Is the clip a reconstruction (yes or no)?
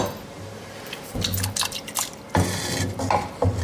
no